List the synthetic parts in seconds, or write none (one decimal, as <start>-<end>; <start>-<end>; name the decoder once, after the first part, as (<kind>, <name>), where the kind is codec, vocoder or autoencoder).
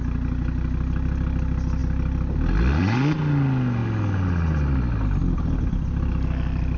none